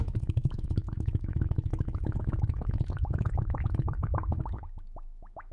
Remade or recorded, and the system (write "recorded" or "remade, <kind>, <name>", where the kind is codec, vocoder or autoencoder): remade, autoencoder, DAC-VAE